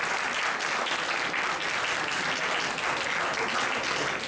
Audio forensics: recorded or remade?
recorded